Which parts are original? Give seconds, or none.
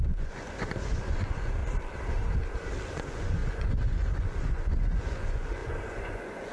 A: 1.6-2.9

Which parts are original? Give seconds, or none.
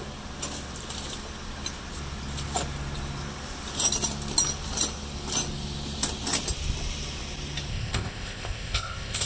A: 0.0-7.7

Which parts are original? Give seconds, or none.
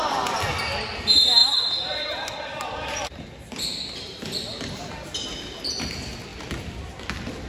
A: 0.0-7.5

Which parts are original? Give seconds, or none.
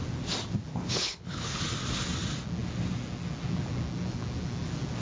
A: 0.0-0.7; 1.6-5.0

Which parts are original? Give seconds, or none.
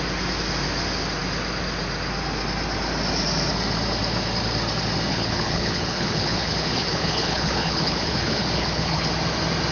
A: 0.0-5.1; 9.1-9.7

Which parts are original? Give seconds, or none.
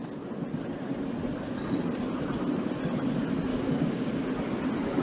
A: 0.0-3.5; 4.1-5.0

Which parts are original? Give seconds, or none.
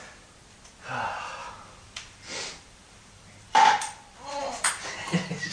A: 0.0-1.4; 4.7-5.5